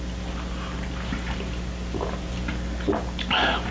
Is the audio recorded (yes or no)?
yes